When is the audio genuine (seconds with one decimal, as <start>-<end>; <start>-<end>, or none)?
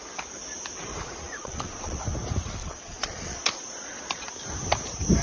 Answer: 0.0-0.9; 2.0-2.6; 4.3-5.2